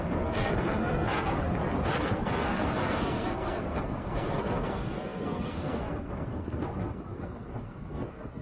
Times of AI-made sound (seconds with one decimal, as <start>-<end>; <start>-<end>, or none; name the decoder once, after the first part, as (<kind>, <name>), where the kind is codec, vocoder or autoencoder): 0.0-1.4 (codec, SNAC); 1.9-8.4